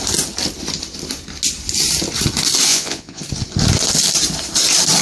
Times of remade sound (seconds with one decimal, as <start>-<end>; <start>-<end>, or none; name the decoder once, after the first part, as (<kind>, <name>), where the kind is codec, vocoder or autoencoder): 2.7-3.2 (vocoder, Vocos)